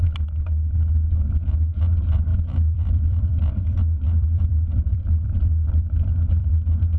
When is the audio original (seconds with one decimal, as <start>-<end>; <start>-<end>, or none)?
0.0-2.3; 6.5-7.0